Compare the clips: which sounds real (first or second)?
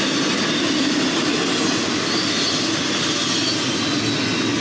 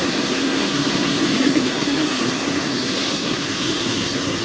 first